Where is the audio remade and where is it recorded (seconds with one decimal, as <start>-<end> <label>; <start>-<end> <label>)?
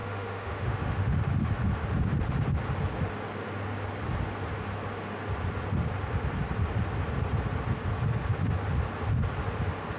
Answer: 0.0-1.5 remade; 1.5-10.0 recorded